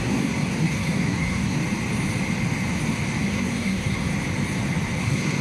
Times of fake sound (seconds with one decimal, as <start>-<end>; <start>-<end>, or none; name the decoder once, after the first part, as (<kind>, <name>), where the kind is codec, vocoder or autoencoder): 0.0-1.6 (codec, SNAC); 3.2-4.1; 5.0-5.4